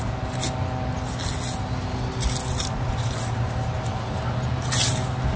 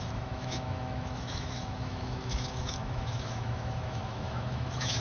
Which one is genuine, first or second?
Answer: first